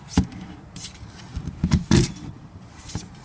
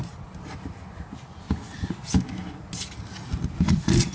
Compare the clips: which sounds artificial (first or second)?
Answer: first